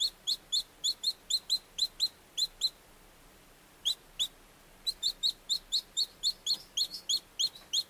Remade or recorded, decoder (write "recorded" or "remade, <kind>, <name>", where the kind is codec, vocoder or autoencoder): recorded